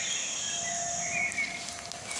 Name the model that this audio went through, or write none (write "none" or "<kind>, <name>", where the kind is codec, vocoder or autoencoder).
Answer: none